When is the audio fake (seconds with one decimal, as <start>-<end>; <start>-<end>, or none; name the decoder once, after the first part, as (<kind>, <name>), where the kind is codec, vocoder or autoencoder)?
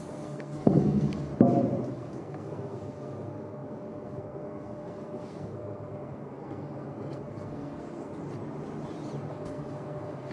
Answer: 0.0-1.3 (codec, SNAC); 1.9-8.1; 9.3-10.3